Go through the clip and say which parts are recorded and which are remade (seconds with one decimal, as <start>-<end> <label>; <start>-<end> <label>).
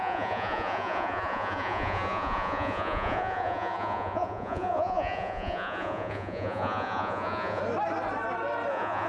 0.0-7.6 remade; 7.6-8.7 recorded; 8.7-9.1 remade